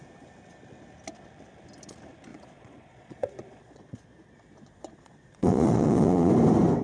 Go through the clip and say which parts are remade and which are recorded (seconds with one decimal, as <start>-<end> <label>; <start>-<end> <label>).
0.0-2.3 recorded; 2.3-6.3 remade; 6.3-6.8 recorded